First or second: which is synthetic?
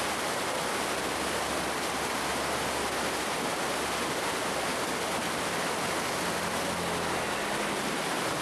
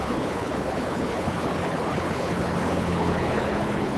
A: second